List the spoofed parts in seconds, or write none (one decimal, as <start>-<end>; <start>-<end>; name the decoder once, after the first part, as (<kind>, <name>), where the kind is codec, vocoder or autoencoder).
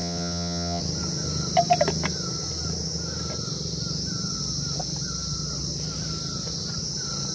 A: 0.0-0.8 (vocoder, WaveNeXt)